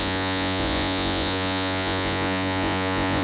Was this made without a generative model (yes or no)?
no